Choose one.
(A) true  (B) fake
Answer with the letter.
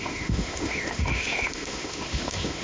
B